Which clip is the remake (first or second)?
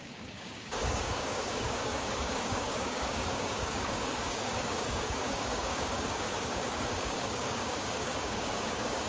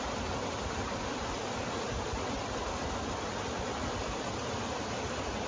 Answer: first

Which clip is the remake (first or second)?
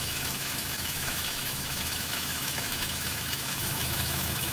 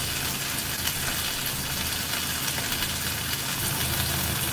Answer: first